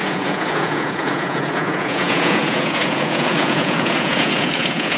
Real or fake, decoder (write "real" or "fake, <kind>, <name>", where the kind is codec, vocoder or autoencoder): fake, vocoder, Vocos